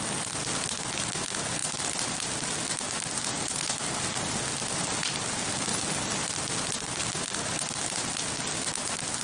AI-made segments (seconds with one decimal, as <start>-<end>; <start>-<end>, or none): none